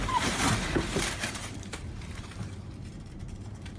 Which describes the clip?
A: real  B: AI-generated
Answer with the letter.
B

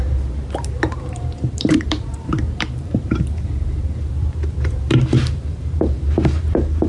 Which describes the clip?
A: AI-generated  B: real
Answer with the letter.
A